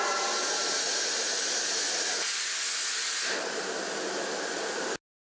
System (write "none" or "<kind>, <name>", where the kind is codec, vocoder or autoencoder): none